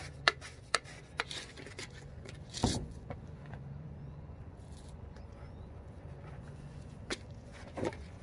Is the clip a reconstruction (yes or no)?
yes